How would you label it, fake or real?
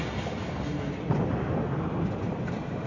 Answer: fake